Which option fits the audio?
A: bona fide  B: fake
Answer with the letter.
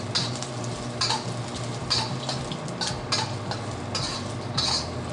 A